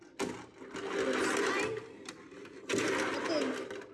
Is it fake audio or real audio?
real